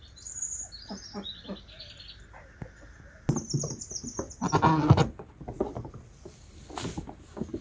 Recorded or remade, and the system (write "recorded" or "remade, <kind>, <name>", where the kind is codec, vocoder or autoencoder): recorded